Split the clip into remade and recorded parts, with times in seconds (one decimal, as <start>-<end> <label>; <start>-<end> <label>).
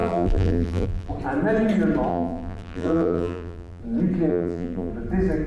0.0-1.1 remade; 1.1-2.1 recorded; 2.1-3.8 remade; 3.8-4.3 recorded; 4.3-4.9 remade; 4.9-5.5 recorded